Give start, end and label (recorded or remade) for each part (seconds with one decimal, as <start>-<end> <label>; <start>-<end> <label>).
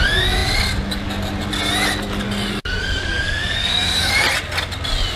0.0-2.6 recorded; 2.6-4.1 remade; 4.1-5.2 recorded